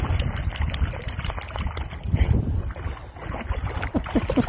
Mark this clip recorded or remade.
recorded